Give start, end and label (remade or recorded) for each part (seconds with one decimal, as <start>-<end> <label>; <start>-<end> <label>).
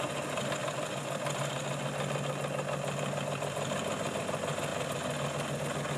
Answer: 0.0-6.0 recorded